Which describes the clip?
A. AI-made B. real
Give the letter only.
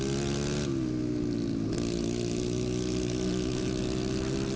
B